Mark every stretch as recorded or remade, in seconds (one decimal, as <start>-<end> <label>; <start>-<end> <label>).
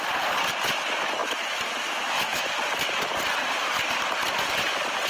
0.0-1.2 recorded; 1.2-2.4 remade; 2.4-5.1 recorded